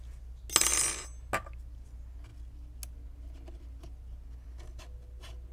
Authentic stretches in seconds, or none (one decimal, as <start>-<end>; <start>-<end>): 0.0-5.5